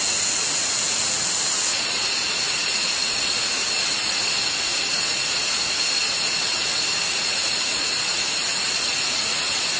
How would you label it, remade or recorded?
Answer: remade